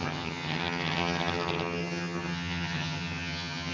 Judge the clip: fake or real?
fake